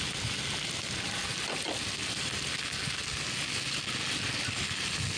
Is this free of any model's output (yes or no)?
yes